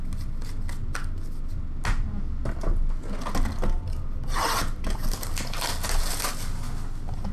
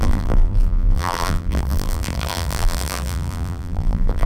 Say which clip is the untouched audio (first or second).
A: first